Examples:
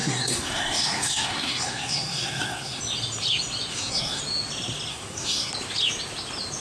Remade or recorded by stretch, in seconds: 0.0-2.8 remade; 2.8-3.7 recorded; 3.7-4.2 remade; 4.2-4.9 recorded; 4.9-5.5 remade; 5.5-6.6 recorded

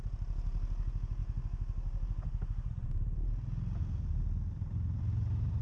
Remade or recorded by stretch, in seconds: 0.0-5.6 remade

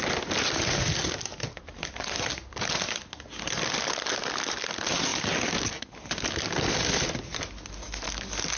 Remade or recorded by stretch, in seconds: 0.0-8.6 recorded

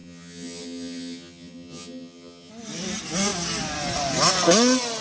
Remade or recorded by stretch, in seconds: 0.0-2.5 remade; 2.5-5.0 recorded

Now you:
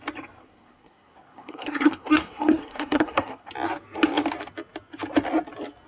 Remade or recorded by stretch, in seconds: 0.0-0.4 recorded; 0.4-3.5 remade; 3.5-5.9 recorded